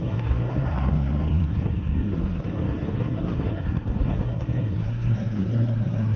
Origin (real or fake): fake